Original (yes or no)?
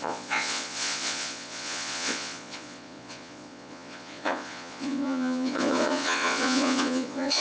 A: no